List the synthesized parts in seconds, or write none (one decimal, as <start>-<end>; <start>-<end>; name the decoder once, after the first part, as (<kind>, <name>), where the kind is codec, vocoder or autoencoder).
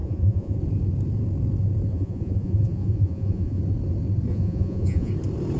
0.0-0.6 (vocoder, Vocos); 1.9-3.6; 4.3-5.1